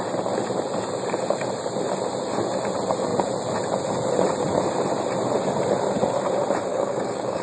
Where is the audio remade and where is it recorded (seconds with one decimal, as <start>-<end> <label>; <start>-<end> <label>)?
0.0-6.7 recorded; 6.7-7.4 remade